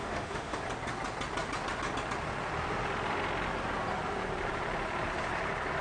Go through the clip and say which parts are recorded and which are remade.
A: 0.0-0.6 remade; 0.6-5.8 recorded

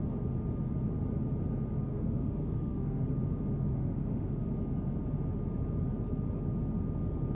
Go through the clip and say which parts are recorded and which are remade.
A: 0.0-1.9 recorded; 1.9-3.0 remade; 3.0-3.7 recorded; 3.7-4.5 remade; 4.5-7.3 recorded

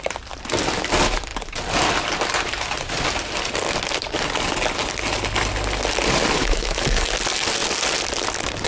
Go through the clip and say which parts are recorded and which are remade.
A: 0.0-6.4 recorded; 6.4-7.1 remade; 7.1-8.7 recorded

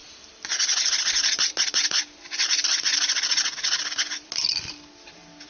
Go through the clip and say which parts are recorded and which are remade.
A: 0.0-5.5 recorded

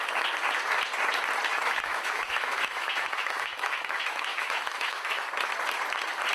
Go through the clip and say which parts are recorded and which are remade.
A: 0.0-1.5 recorded; 1.5-5.3 remade; 5.3-6.3 recorded

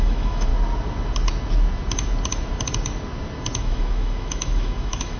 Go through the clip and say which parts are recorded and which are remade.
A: 0.0-0.5 remade; 0.5-3.6 recorded; 3.6-5.2 remade

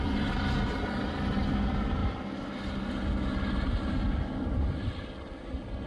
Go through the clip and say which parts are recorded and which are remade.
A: 0.0-5.9 recorded

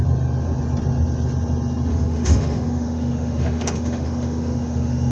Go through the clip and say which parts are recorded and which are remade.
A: 0.0-1.9 recorded; 1.9-5.1 remade